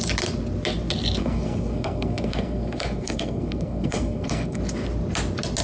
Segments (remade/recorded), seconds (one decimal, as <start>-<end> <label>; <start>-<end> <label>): 0.0-1.2 recorded; 1.2-4.6 remade; 4.6-5.6 recorded